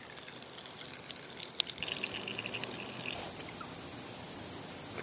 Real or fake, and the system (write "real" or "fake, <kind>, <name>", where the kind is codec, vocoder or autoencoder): real